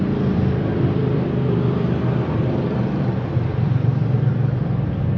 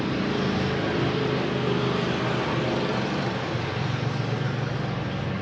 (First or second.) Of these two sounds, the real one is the second